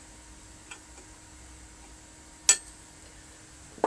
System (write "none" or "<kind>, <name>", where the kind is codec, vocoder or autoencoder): none